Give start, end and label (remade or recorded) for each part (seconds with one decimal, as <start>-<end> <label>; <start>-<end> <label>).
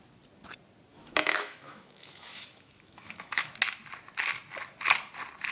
0.0-0.9 recorded; 0.9-3.5 remade; 3.5-5.5 recorded